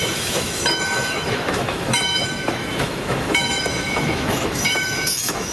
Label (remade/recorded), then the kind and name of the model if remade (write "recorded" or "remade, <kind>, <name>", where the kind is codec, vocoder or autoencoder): remade, autoencoder, DAC-VAE